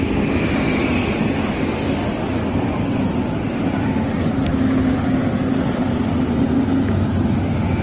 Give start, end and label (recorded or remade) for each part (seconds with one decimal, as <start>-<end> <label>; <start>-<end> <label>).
0.0-2.0 recorded; 2.0-4.2 remade; 4.2-7.8 recorded